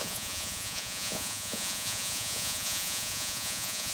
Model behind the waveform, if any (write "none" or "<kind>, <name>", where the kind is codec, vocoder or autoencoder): vocoder, Vocos